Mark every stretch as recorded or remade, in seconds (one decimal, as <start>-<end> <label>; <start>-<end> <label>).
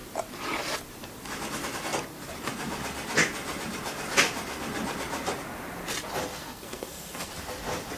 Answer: 0.0-6.4 recorded; 6.4-7.3 remade; 7.3-8.0 recorded